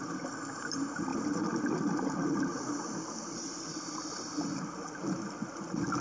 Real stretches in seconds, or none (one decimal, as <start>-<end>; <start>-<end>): 0.0-6.0

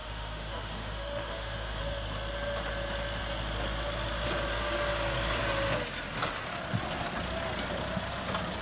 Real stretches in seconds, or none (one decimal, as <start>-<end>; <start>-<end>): 1.8-8.6

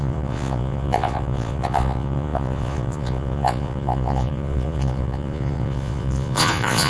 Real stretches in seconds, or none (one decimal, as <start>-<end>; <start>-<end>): none

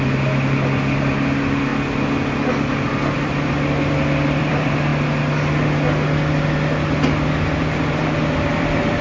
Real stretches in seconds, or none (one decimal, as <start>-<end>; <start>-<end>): 1.7-2.5; 4.9-7.3